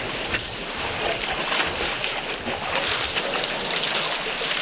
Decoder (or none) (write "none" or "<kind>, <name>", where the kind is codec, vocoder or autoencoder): none